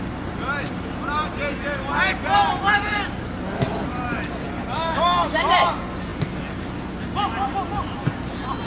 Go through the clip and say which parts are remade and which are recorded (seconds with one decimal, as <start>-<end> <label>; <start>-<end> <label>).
0.0-8.7 recorded